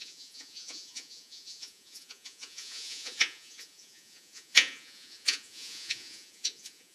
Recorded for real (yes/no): no